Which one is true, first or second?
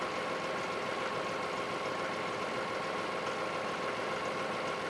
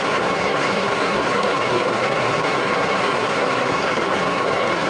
first